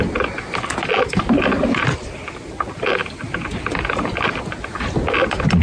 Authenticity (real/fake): real